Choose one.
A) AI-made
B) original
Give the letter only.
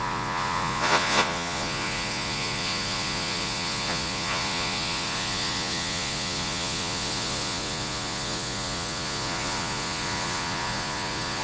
A